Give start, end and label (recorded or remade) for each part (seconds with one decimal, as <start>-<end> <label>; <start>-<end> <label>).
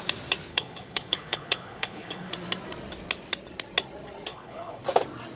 0.0-0.5 recorded; 0.5-2.3 remade; 2.3-4.3 recorded; 4.3-4.8 remade; 4.8-5.4 recorded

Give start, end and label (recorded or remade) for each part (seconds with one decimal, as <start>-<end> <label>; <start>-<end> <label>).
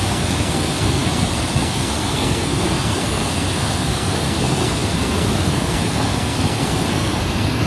0.0-7.7 remade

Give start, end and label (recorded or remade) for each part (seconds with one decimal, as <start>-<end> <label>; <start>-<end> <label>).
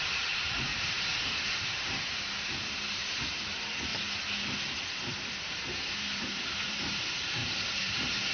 0.0-3.9 remade; 3.9-5.4 recorded; 5.4-8.3 remade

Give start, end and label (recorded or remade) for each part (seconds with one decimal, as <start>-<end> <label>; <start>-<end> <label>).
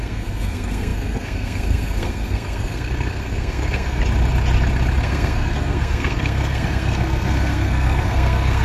0.0-4.0 remade; 4.0-5.0 recorded; 5.0-8.6 remade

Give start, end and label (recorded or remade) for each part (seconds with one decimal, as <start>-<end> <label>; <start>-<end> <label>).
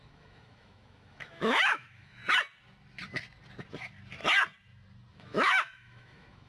0.0-2.2 remade; 2.2-5.1 recorded; 5.1-6.5 remade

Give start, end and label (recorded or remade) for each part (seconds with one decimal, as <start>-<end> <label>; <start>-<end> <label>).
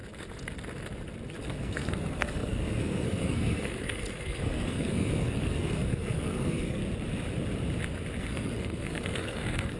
0.0-1.4 recorded; 1.4-6.8 remade; 6.8-8.2 recorded; 8.2-9.8 remade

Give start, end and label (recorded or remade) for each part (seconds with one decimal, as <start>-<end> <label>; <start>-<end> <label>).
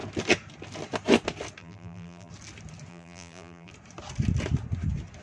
0.0-1.6 recorded; 1.6-2.3 remade; 2.3-2.9 recorded; 2.9-3.7 remade; 3.7-5.2 recorded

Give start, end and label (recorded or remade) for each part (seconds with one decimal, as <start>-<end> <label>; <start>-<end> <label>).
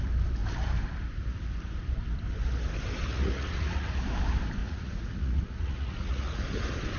0.0-3.1 recorded; 3.1-3.9 remade; 3.9-4.6 recorded; 4.6-6.4 remade; 6.4-7.0 recorded